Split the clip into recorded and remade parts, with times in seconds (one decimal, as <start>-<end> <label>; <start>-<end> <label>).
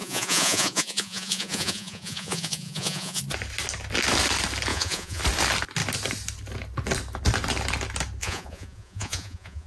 0.0-3.2 remade; 3.2-4.7 recorded; 4.7-5.2 remade; 5.2-8.2 recorded; 8.2-9.7 remade